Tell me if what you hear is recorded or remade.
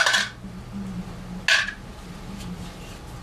recorded